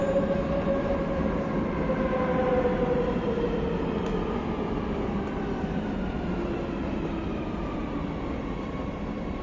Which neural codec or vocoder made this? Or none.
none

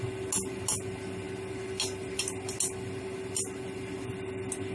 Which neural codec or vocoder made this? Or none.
none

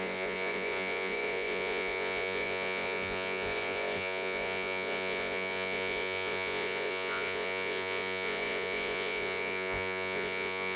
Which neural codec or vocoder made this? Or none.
vocoder, Vocos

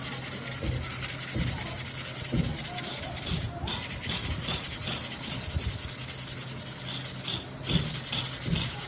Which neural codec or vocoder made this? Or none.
none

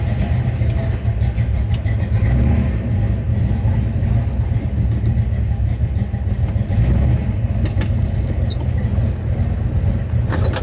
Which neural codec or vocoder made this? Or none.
none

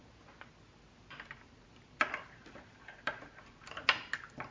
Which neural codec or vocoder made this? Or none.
none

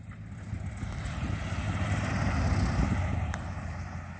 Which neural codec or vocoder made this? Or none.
none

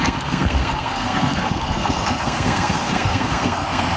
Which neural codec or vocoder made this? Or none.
codec, SNAC